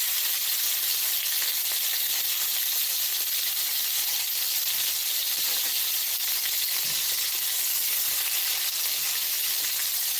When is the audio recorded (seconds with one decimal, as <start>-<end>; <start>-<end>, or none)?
0.0-10.2